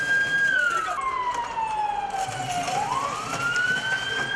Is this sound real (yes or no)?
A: yes